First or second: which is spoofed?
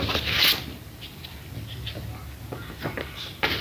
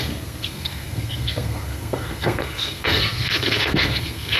second